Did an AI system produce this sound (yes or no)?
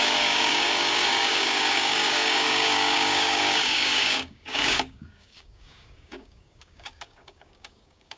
yes